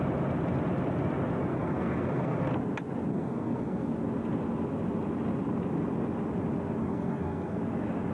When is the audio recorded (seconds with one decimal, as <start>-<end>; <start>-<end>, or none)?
0.0-1.5; 2.4-3.1; 3.9-6.8; 7.6-8.1